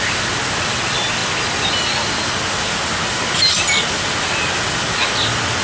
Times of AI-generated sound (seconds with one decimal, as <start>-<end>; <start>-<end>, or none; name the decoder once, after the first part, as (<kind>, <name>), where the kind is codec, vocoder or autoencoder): none